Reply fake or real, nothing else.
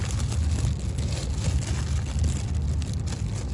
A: real